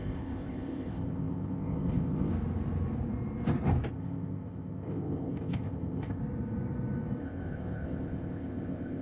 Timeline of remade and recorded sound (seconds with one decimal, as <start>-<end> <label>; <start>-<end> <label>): 0.0-2.3 remade; 2.3-3.9 recorded; 3.9-6.2 remade; 6.2-7.2 recorded; 7.2-9.0 remade